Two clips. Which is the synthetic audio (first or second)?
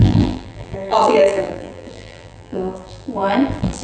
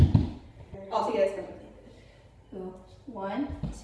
first